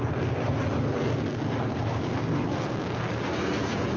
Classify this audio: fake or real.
real